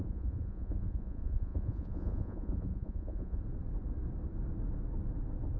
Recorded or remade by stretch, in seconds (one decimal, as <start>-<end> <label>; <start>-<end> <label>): 0.0-3.4 remade; 3.4-5.6 recorded